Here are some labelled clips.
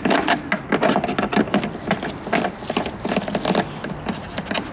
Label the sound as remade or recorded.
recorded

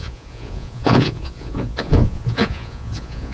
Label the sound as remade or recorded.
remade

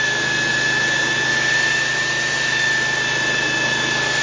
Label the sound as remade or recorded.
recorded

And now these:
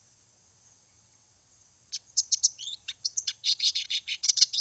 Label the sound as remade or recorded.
remade